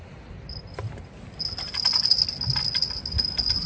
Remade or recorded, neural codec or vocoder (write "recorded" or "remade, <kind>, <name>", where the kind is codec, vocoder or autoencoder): recorded